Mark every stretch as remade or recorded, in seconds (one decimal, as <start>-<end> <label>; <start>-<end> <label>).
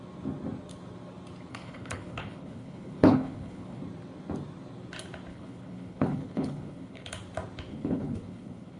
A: 0.0-1.5 recorded; 1.5-3.8 remade; 3.8-5.3 recorded; 5.3-7.1 remade; 7.1-7.7 recorded; 7.7-8.8 remade